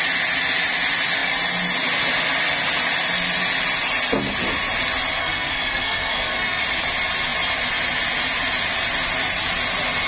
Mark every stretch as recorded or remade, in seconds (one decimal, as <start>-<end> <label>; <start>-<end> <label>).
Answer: 0.0-5.2 recorded; 5.2-6.6 remade; 6.6-10.1 recorded